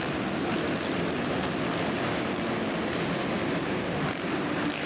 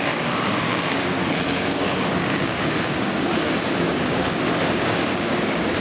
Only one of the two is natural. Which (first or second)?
first